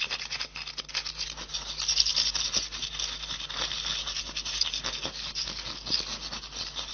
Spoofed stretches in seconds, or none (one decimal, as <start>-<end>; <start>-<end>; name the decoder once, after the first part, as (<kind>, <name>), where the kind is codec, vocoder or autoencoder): none